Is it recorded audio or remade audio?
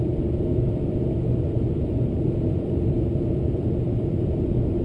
remade